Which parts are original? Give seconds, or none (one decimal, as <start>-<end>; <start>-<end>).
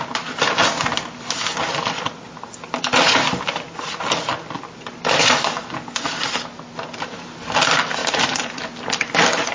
0.0-8.0; 8.6-9.5